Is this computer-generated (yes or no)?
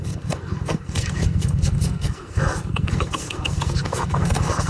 yes